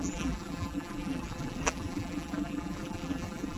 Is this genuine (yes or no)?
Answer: no